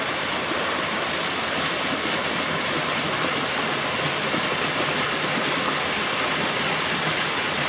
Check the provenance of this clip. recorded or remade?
recorded